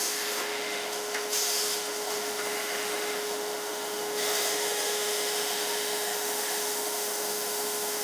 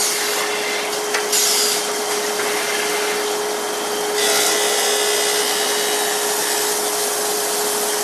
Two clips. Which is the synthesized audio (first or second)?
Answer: first